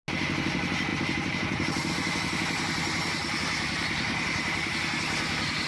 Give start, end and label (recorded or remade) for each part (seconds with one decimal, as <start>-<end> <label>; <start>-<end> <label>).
0.0-0.9 recorded; 0.9-1.9 remade; 1.9-3.2 recorded; 3.2-4.7 remade; 4.7-5.7 recorded